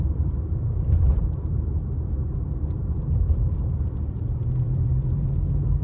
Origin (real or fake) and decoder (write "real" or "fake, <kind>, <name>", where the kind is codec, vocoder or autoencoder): fake, vocoder, BigVGAN v2